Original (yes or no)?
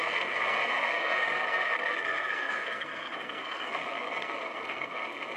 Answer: no